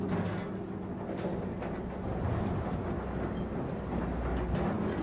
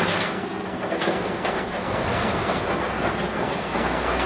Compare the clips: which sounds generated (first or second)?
second